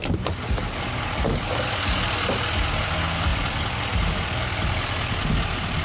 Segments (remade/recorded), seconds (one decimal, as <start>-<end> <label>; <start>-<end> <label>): 0.0-5.8 recorded